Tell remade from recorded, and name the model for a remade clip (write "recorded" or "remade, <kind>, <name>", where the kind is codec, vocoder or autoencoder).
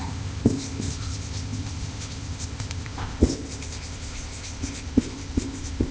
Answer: remade, codec, ZipCodec